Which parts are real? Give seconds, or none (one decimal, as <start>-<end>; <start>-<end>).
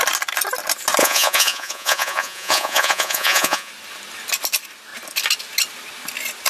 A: 0.0-1.0; 3.7-6.5